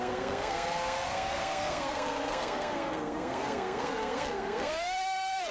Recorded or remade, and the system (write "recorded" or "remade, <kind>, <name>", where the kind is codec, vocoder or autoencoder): remade, codec, SNAC